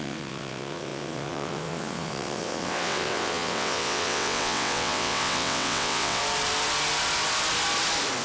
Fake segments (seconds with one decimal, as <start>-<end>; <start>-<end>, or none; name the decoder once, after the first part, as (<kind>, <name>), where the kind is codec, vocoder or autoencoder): 0.0-6.2 (vocoder, WaveNeXt)